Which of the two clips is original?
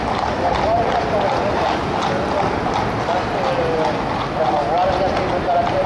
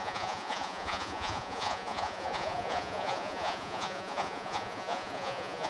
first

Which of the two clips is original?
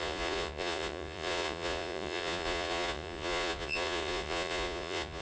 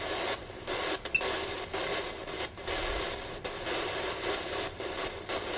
second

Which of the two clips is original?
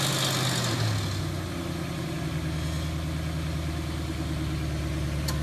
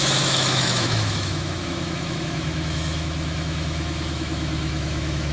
first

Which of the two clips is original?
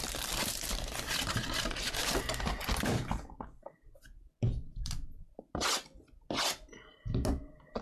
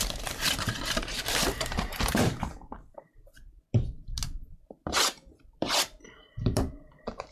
first